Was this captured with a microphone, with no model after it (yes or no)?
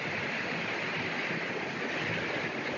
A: yes